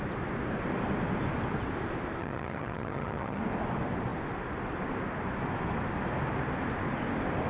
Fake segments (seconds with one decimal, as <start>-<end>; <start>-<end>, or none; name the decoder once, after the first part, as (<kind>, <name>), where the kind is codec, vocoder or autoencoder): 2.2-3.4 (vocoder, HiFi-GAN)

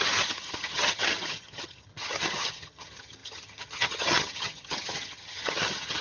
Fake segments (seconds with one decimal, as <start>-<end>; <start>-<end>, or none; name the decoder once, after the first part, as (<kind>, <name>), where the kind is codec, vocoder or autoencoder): 0.0-6.0 (vocoder, HiFi-GAN)

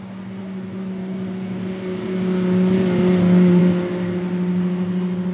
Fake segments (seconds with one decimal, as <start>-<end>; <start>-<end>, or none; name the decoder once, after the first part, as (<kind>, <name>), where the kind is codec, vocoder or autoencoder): none

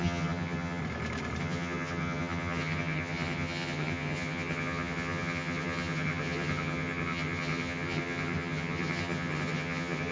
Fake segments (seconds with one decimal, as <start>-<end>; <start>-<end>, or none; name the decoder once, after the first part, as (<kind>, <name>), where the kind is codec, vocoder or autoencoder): 0.0-0.8 (vocoder, HiFi-GAN); 1.4-10.1